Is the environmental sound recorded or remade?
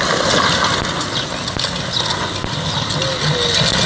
recorded